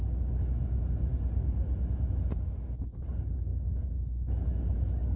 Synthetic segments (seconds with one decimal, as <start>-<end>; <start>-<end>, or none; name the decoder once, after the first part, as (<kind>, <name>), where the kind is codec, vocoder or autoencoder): 3.5-4.3 (codec, DAC)